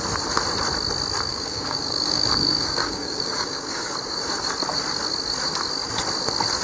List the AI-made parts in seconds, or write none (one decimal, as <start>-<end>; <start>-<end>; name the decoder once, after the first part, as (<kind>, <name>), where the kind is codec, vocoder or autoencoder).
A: 1.3-3.9 (codec, DAC)